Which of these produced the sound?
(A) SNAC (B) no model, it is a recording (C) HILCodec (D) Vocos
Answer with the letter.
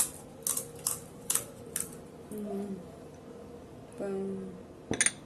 B